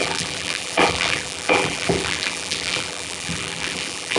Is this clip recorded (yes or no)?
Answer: no